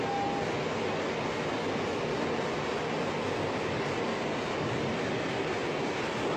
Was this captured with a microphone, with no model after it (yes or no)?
yes